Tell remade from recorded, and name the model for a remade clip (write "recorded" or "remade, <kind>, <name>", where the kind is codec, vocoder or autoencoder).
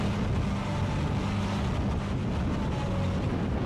recorded